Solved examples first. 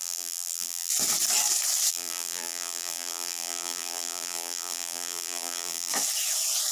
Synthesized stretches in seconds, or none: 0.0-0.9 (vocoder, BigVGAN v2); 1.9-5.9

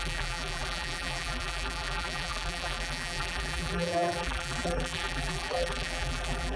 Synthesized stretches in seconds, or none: 0.0-6.6 (vocoder, BigVGAN v2)

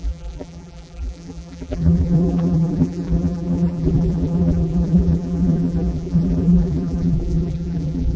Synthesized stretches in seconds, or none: 0.0-8.2 (vocoder, BigVGAN v2)